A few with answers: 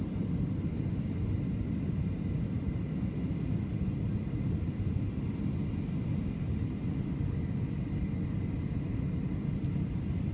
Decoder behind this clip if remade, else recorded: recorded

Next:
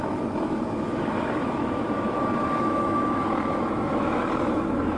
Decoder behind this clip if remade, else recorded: remade, autoencoder, DAC-VAE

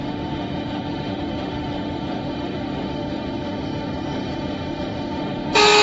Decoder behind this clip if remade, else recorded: remade, autoencoder, DAC-VAE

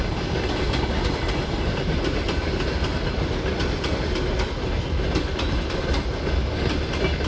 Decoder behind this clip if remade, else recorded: recorded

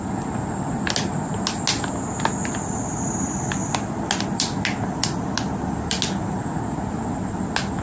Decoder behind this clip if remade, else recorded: recorded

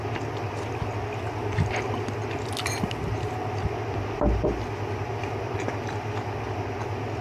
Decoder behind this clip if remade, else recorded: recorded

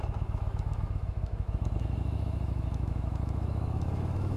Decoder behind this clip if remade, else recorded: remade, autoencoder, DAC-VAE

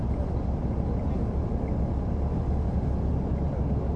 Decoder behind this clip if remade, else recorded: recorded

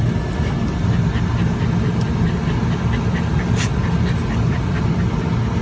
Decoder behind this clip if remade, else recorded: recorded